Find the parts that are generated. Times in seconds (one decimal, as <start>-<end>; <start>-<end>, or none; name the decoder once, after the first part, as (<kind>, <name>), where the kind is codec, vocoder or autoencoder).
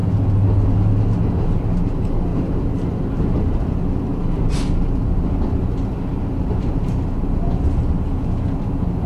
none